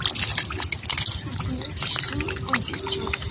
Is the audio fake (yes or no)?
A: no